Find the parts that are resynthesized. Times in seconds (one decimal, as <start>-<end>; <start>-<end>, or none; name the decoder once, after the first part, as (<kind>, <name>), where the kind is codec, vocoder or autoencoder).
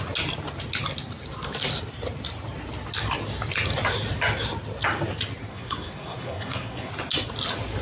5.5-6.9 (codec, SNAC)